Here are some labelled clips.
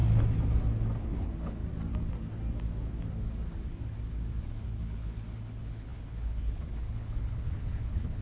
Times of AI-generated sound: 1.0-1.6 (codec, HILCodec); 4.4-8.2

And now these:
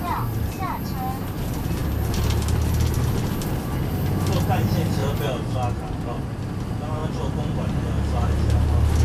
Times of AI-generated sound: none